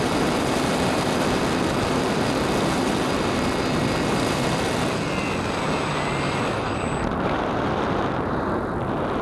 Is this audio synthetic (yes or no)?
no